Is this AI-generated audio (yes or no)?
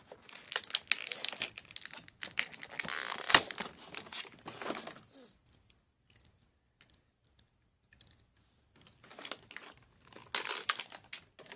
no